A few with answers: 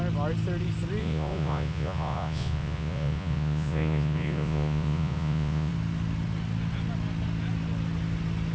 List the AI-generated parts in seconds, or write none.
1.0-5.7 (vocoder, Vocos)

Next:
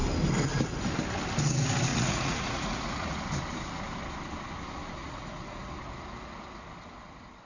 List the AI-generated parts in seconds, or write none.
1.9-3.2 (vocoder, Vocos); 5.0-5.7

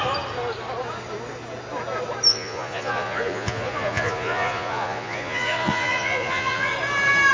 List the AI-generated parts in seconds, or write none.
2.3-6.7 (vocoder, Vocos)